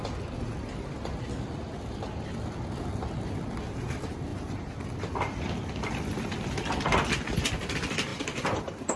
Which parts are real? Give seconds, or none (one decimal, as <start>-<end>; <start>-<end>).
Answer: 0.0-4.3; 4.8-8.1